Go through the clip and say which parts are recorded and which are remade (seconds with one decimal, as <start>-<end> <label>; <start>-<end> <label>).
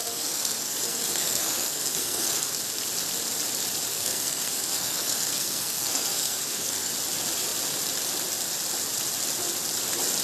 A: 0.0-2.6 remade; 2.6-3.9 recorded; 3.9-6.9 remade; 6.9-10.2 recorded